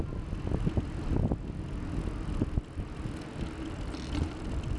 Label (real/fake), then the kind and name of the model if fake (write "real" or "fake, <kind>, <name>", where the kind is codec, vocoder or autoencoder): real